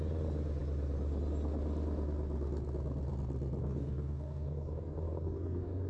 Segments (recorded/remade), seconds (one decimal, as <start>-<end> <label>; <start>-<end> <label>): 0.0-3.6 recorded; 3.6-5.9 remade